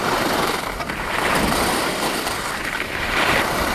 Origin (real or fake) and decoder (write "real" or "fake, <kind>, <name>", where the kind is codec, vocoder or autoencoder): fake, vocoder, BigVGAN v2